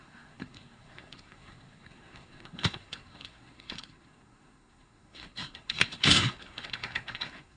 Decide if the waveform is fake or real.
fake